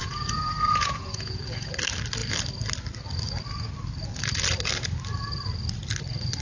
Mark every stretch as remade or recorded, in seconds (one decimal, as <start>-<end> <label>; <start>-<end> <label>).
0.0-1.7 remade; 1.7-6.4 recorded